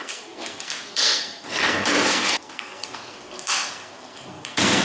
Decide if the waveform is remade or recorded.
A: remade